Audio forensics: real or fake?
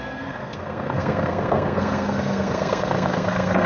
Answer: fake